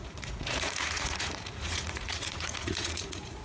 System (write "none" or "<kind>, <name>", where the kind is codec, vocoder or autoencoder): vocoder, Vocos